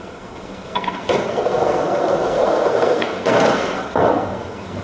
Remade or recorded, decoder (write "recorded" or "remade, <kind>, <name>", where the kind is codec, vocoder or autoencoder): remade, codec, SNAC